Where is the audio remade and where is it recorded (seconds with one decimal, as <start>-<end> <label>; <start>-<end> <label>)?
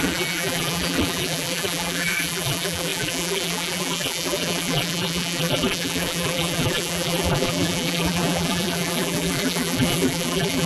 0.0-10.7 remade